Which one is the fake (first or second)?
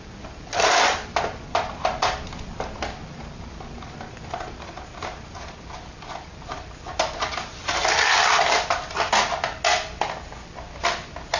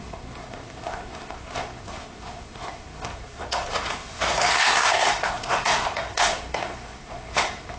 second